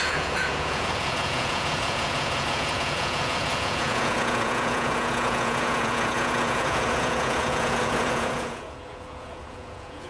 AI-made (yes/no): yes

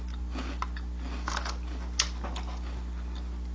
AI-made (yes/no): no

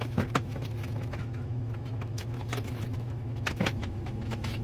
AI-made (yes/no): yes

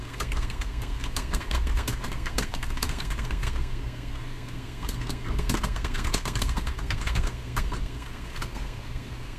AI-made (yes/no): yes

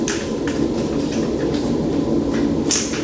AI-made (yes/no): no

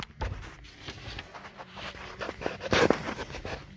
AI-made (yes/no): no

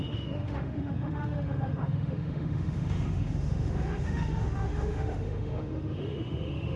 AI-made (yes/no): yes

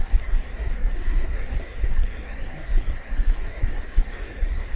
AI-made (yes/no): yes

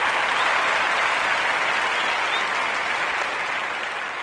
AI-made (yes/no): no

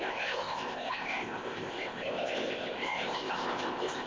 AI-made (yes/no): yes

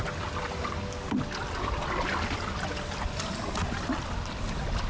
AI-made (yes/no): no